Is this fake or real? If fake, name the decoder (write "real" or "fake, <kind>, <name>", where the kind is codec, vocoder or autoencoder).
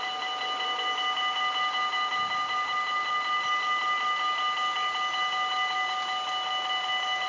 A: real